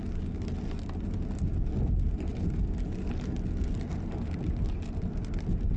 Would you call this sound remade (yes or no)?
no